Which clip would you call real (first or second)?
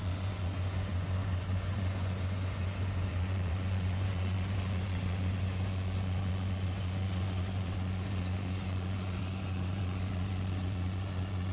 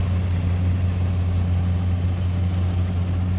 second